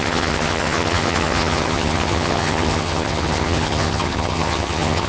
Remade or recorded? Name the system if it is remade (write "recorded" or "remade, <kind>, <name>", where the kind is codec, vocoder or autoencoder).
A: remade, vocoder, HiFi-GAN